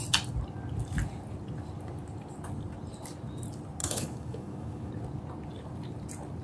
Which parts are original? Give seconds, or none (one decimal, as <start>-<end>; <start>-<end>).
0.0-3.8; 4.9-6.4